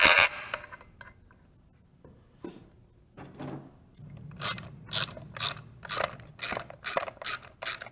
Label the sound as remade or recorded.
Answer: recorded